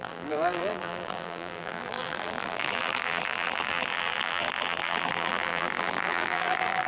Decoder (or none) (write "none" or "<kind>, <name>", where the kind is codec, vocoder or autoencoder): vocoder, BigVGAN v2